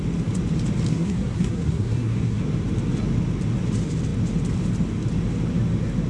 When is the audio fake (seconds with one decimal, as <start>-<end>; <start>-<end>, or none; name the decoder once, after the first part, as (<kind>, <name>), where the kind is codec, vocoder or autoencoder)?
0.9-2.4 (codec, SNAC)